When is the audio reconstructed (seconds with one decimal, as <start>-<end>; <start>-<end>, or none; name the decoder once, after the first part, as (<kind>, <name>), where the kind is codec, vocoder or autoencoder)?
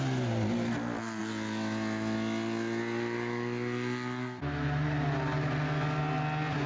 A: none